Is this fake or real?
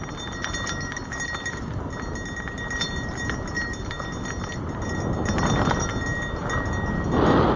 real